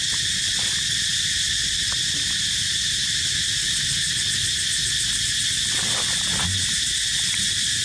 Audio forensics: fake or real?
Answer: real